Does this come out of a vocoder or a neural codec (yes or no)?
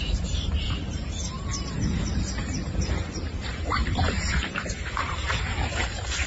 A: yes